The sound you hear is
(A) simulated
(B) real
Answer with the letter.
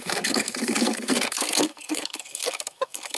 A